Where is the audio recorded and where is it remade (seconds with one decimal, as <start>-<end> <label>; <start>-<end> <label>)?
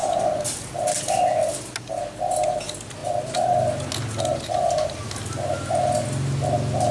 0.0-6.9 recorded